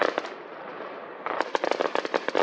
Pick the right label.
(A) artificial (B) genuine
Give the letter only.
B